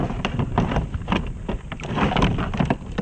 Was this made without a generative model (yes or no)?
yes